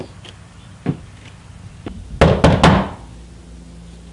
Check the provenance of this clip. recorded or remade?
recorded